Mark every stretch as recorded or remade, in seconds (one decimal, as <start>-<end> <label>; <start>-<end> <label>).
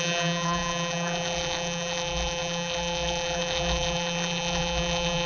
0.0-5.3 remade